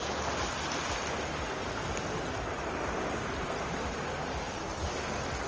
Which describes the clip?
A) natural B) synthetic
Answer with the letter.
A